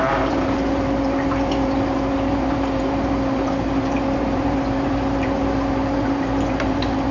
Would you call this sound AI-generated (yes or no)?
yes